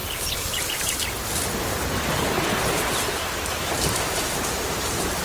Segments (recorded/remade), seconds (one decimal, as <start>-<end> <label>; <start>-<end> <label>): 0.0-1.0 remade; 1.0-3.1 recorded; 3.1-5.2 remade